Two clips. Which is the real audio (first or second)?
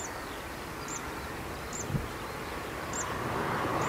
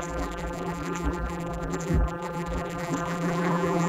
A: first